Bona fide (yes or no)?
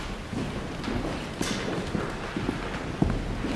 yes